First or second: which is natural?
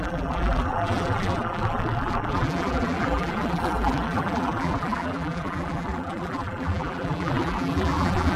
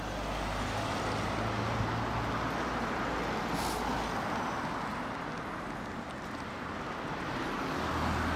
second